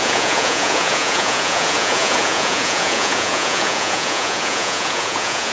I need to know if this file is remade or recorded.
remade